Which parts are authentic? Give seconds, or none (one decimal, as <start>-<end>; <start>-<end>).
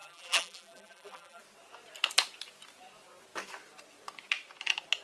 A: 1.4-5.0